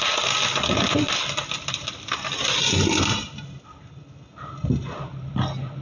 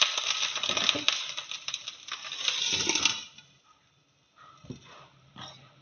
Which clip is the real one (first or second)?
first